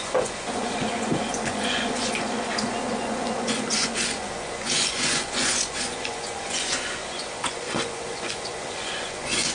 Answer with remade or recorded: remade